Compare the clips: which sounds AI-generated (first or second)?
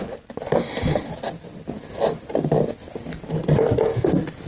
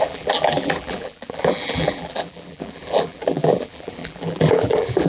second